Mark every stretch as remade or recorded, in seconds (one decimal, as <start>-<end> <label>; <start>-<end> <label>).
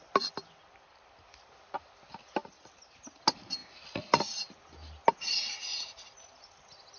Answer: 0.0-7.0 recorded